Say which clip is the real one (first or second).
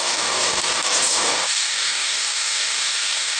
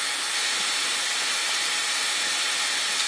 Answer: second